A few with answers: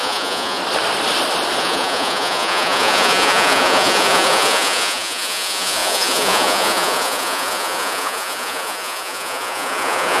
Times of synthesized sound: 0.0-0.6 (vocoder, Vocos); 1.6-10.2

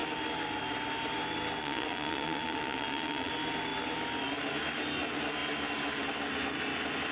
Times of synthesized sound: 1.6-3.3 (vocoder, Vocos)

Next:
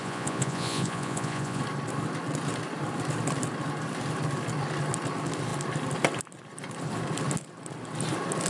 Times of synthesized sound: 0.0-1.6 (vocoder, Vocos)

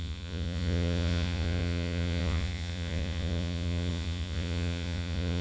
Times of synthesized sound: 0.0-5.4 (vocoder, Vocos)

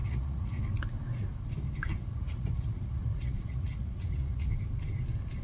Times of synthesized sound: 0.0-0.6 (vocoder, Vocos); 2.0-4.5

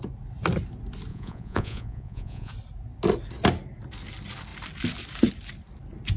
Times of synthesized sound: 1.1-2.5 (vocoder, Vocos)

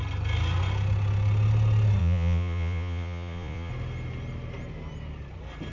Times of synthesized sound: 2.0-3.7 (vocoder, Vocos)

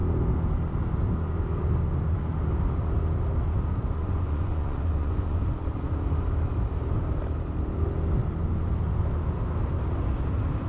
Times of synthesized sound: 3.9-5.4 (vocoder, Vocos)